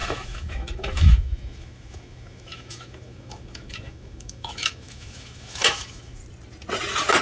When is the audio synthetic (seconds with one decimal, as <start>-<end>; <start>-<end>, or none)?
0.0-6.2